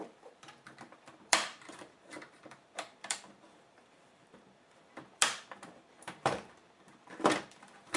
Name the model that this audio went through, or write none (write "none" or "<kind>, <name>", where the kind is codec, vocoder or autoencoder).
vocoder, BigVGAN v2